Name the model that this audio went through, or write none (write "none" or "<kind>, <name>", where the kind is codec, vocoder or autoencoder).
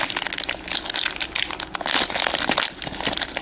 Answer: none